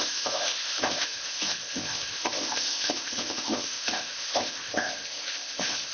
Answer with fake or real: fake